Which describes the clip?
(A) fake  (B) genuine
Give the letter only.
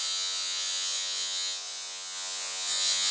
A